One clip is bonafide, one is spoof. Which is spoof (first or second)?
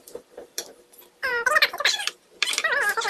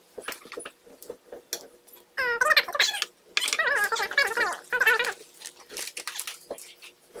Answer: first